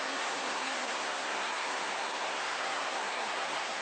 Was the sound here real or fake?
fake